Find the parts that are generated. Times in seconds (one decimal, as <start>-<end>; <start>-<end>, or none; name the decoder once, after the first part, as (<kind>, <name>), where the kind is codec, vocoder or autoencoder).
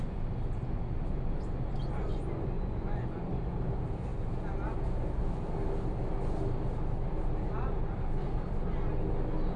2.1-3.3 (vocoder, Vocos)